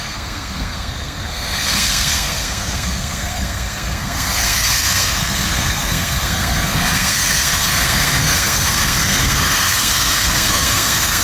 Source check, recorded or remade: remade